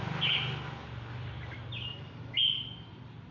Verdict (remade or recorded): recorded